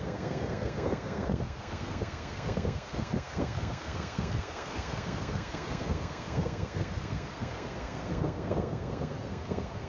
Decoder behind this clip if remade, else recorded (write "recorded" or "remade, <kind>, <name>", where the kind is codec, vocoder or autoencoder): remade, codec, SNAC